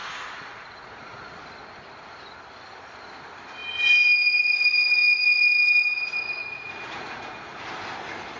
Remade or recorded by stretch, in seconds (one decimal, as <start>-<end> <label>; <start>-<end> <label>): 0.0-1.4 remade; 1.4-6.4 recorded; 6.4-7.6 remade; 7.6-8.4 recorded